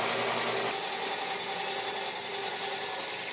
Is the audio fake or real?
real